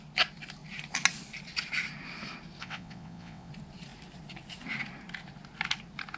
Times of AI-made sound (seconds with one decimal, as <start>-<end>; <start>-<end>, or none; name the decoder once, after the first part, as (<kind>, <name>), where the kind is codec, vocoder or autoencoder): 2.6-3.5 (vocoder, WaveNeXt)